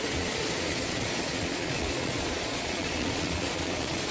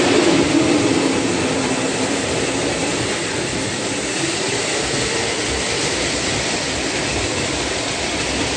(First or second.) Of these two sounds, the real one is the second